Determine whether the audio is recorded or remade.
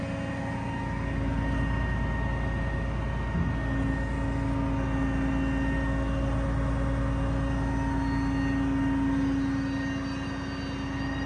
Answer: recorded